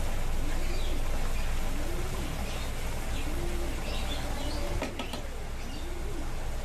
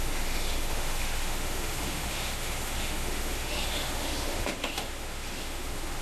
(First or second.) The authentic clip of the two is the first